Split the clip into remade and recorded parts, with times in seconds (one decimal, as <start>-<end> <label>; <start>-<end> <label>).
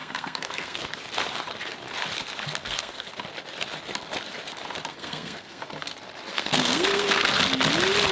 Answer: 0.0-0.8 remade; 0.8-2.6 recorded; 2.6-3.1 remade; 3.1-4.9 recorded; 4.9-5.6 remade; 5.6-6.3 recorded; 6.3-7.3 remade; 7.3-8.1 recorded